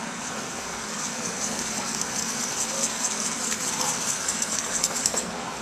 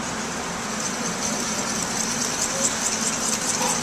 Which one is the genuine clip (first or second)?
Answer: second